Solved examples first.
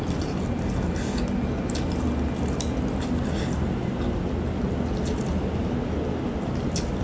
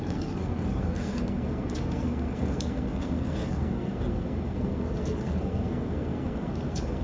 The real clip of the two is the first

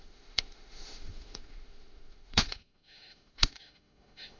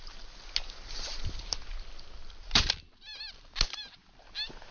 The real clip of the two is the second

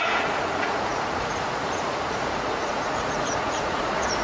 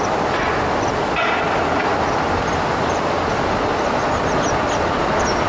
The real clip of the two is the second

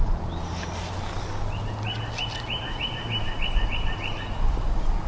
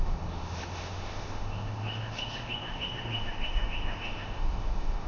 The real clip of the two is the first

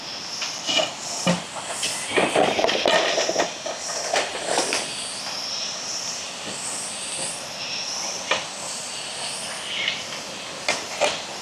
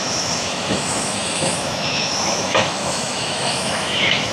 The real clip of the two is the first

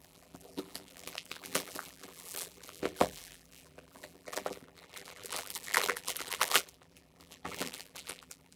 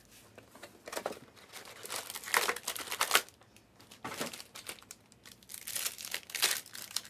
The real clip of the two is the second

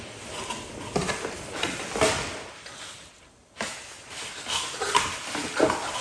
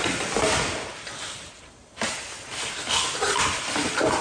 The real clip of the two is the first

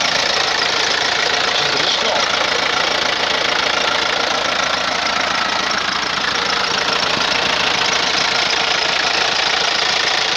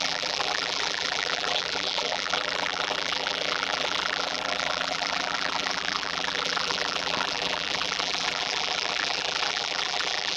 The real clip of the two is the first